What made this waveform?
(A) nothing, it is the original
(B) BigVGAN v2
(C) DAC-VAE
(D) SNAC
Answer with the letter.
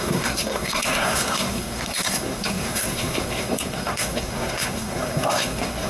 D